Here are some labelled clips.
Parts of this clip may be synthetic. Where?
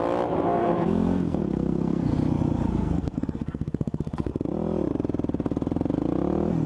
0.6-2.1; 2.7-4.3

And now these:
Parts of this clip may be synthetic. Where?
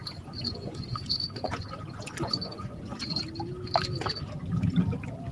0.0-3.2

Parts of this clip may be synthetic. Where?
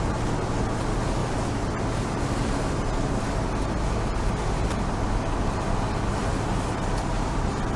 none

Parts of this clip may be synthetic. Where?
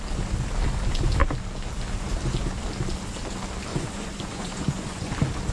3.7-5.1